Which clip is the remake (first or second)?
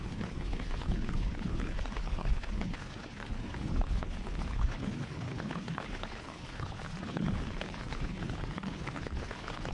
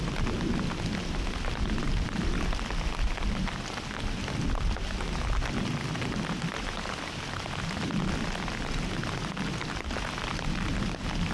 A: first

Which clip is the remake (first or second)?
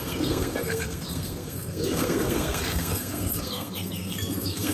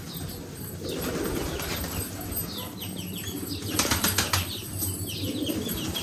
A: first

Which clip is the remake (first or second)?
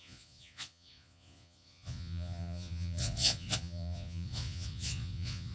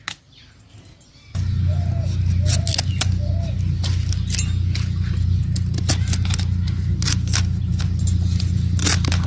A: first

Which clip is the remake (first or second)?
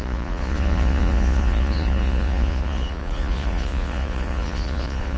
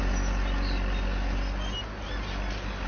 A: first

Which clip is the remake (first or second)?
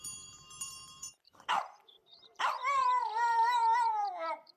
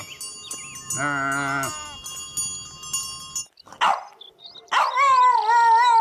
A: first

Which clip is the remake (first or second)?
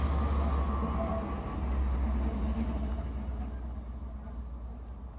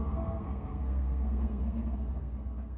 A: second